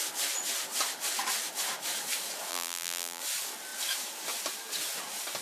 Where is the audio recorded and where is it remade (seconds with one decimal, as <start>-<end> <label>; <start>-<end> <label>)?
0.0-2.5 recorded; 2.5-3.2 remade; 3.2-5.4 recorded